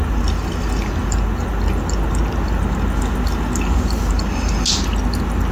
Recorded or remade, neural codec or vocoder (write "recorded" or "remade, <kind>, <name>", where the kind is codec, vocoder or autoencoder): recorded